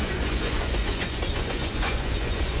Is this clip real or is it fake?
fake